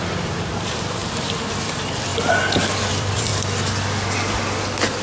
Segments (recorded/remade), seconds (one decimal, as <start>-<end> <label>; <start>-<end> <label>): 0.0-2.1 remade; 2.1-2.9 recorded; 2.9-3.3 remade; 3.3-5.0 recorded